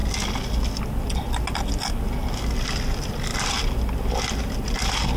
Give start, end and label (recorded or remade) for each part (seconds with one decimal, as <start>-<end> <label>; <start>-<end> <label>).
0.0-5.2 recorded